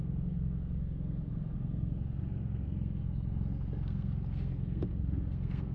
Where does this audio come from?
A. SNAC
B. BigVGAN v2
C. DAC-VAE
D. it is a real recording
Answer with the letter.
A